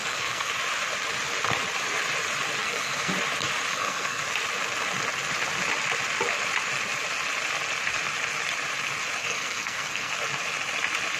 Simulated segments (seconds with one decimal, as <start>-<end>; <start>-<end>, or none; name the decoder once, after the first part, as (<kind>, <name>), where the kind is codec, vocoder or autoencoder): 0.0-0.5 (codec, SNAC); 2.6-3.1; 3.7-4.2; 9.2-10.1